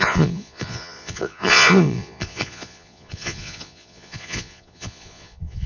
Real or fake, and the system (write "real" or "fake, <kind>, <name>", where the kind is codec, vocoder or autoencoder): fake, vocoder, Vocos